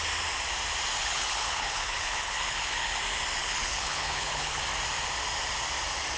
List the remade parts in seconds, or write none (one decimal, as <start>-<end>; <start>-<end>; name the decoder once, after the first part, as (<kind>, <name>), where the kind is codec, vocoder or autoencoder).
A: 1.0-3.0 (codec, HILCodec); 3.4-4.6